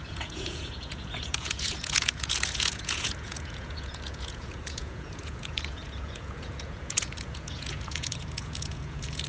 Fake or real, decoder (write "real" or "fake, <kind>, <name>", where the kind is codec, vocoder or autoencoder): fake, vocoder, Vocos